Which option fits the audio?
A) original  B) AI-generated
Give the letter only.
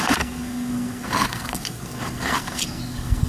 B